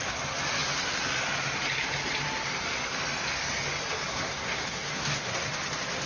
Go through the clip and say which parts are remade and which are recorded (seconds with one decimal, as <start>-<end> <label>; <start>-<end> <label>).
0.0-4.1 recorded; 4.1-5.5 remade; 5.5-6.1 recorded